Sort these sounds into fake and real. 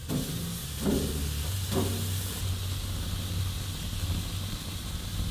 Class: real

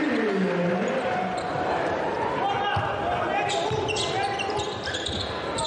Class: real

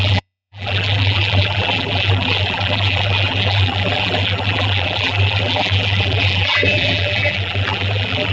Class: fake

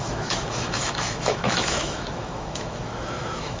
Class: fake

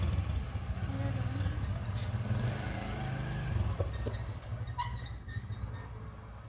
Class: real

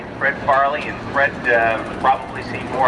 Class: real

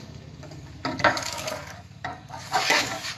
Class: fake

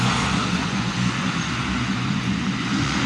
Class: fake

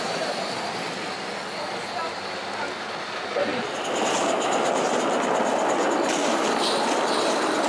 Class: real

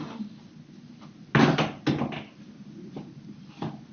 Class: real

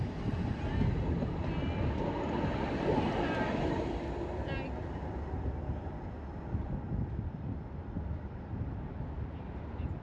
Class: real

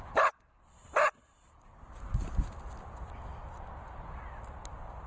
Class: real